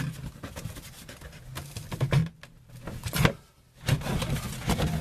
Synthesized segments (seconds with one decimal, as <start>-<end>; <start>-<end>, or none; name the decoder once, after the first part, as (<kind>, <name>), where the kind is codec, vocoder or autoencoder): none